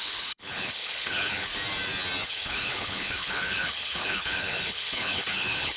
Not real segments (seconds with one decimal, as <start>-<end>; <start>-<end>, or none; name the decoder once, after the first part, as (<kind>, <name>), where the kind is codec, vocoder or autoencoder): 0.0-1.5 (codec, HILCodec); 2.3-5.8